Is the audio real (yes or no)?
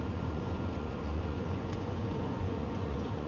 no